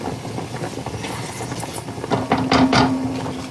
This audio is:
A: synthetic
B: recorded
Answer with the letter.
B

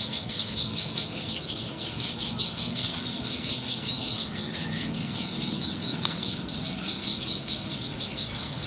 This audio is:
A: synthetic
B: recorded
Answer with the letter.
A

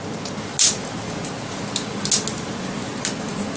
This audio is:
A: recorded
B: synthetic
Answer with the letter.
A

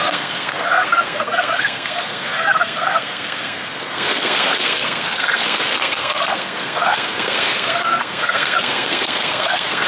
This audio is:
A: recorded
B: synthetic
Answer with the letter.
B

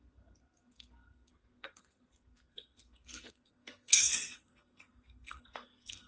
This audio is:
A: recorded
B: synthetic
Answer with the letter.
B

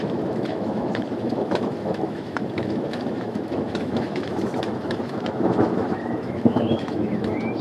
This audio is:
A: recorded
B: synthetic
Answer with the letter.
B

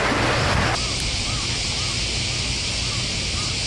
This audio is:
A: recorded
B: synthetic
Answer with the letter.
A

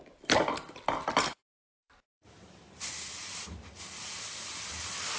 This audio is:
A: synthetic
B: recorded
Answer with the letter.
B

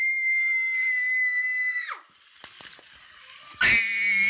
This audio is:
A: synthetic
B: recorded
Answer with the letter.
B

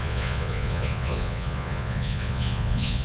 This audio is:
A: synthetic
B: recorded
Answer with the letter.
A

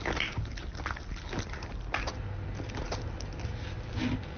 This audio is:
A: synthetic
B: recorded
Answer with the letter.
B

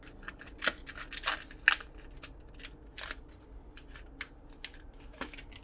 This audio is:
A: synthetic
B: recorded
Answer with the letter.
B